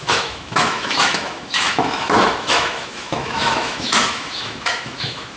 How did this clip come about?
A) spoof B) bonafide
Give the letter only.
A